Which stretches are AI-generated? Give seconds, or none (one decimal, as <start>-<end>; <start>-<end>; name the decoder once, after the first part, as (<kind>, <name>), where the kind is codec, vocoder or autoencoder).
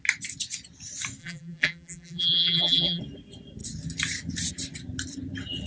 1.2-3.0 (vocoder, BigVGAN v2)